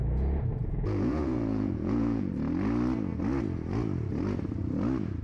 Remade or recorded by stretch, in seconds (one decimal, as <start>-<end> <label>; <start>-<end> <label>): 0.0-0.6 recorded; 0.6-2.3 remade; 2.3-5.2 recorded